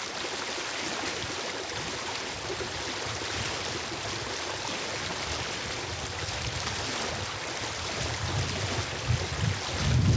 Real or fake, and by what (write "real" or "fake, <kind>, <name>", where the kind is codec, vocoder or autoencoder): real